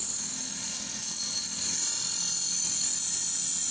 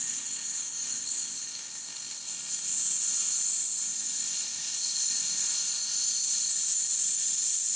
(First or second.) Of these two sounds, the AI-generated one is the second